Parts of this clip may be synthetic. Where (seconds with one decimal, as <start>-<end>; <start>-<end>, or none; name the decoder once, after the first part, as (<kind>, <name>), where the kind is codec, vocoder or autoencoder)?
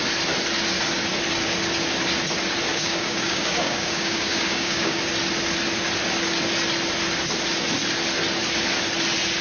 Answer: 2.7-5.0 (codec, DAC)